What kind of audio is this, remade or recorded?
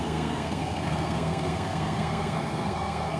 remade